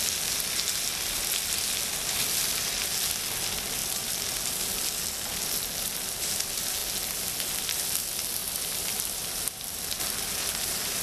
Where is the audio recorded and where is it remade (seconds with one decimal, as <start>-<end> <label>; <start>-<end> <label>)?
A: 0.0-8.4 recorded; 8.4-9.6 remade; 9.6-11.0 recorded